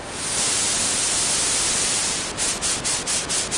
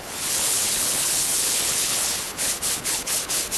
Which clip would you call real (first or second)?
first